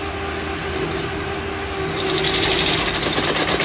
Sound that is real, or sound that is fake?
real